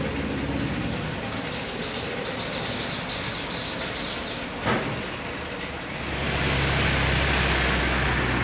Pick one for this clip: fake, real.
real